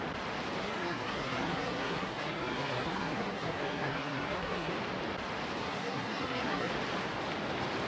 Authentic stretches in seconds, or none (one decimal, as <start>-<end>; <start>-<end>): 0.0-0.6; 4.7-5.6; 6.7-7.9